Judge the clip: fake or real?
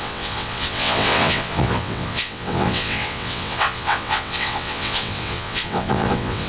fake